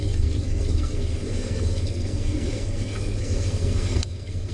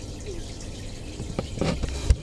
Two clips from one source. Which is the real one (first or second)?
second